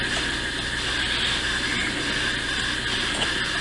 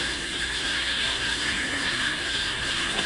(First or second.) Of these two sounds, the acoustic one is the first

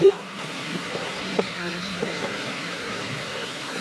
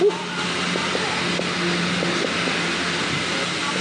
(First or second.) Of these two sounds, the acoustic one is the second